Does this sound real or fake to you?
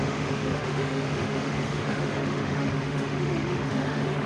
fake